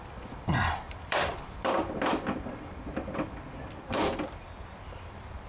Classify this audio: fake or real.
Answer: fake